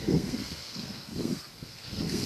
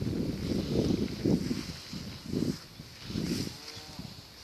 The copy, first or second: first